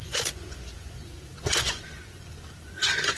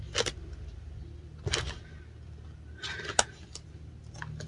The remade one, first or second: first